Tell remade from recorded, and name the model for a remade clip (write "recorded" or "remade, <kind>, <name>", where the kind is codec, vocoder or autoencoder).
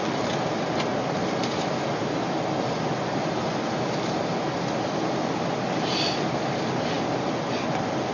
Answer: recorded